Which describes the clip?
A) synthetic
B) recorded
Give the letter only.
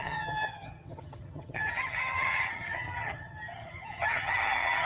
A